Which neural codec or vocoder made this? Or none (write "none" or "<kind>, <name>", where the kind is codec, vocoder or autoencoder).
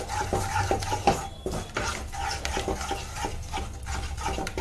none